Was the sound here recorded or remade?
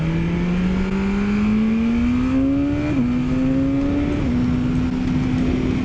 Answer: recorded